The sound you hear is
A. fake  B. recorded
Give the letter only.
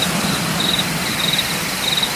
B